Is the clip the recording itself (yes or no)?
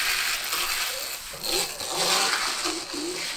yes